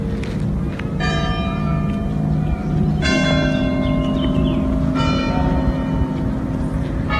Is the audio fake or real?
real